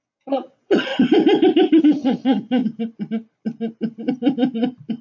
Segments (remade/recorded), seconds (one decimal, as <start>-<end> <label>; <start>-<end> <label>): 0.0-0.9 remade; 0.9-1.8 recorded; 1.8-2.6 remade; 2.6-5.0 recorded